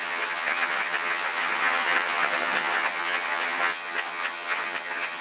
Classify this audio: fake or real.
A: fake